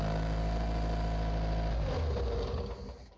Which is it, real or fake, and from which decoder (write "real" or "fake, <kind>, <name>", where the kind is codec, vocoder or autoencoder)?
real